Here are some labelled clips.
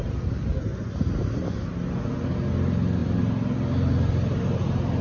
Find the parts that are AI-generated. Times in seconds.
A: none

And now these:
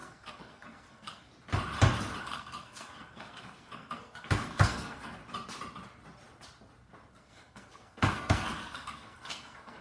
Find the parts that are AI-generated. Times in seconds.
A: 0.0-1.3 (codec, SNAC); 2.2-5.2; 7.1-9.8

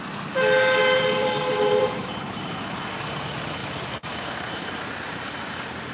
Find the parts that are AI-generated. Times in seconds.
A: 0.8-2.8 (vocoder, BigVGAN v2); 3.6-4.6

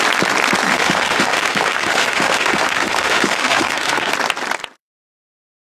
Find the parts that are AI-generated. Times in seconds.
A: 0.7-4.1 (autoencoder, DAC-VAE)

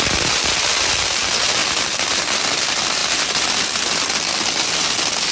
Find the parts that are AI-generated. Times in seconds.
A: none

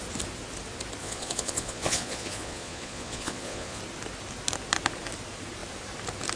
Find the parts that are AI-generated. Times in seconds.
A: 1.0-3.8 (vocoder, Vocos)

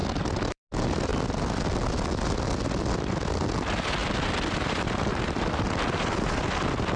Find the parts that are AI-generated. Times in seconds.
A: 0.0-0.6 (vocoder, BigVGAN v2); 1.1-2.4; 4.0-5.0